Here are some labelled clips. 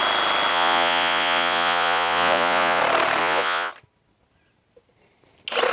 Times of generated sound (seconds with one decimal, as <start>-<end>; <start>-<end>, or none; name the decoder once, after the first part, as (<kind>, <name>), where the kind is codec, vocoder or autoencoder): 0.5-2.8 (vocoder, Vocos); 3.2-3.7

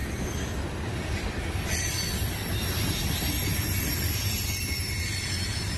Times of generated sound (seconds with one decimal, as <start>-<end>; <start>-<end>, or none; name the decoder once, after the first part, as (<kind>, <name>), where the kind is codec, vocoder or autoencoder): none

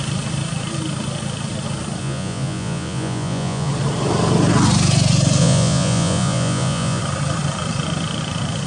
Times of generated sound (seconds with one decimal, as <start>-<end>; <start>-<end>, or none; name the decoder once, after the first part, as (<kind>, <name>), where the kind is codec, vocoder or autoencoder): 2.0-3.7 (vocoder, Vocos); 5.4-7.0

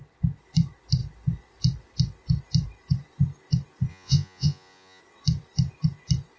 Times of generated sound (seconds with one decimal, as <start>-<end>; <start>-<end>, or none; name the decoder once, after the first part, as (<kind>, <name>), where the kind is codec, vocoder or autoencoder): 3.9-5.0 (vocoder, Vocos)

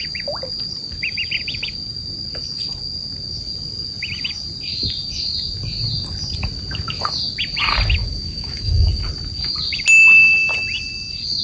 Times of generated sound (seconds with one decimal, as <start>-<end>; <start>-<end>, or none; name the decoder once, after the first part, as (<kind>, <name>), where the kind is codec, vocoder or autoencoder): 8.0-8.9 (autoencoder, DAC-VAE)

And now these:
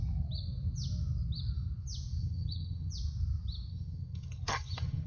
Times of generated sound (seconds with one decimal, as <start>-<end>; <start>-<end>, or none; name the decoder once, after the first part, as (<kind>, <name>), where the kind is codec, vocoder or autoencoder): 2.2-2.9 (vocoder, HiFi-GAN); 3.7-5.1

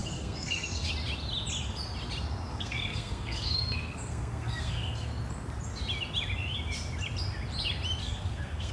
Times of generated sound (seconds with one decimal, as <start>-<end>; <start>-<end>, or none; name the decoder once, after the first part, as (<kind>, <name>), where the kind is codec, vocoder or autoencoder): 0.0-0.9 (codec, SNAC); 2.5-5.1; 8.0-8.7

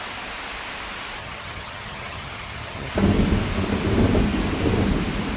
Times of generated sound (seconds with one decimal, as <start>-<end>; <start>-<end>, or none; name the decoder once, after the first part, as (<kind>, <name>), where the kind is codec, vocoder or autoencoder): 1.2-2.9 (vocoder, HiFi-GAN)